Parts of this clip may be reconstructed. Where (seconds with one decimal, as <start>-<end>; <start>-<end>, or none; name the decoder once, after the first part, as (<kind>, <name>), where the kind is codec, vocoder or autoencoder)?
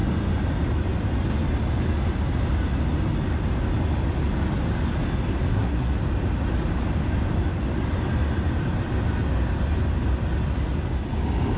5.5-6.0 (codec, SNAC)